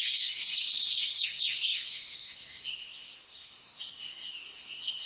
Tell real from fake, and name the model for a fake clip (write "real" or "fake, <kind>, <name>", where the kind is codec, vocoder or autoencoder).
fake, codec, SNAC